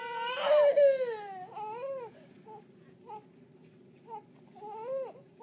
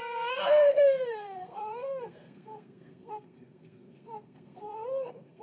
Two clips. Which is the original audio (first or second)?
first